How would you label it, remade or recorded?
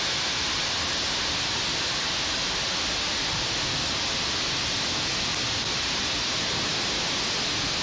recorded